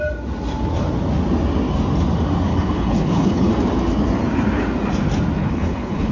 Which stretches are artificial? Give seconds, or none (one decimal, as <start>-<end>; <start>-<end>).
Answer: 2.5-3.5; 5.4-6.1